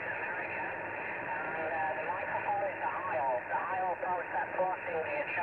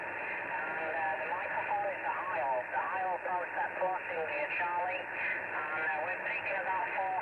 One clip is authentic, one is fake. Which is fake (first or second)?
first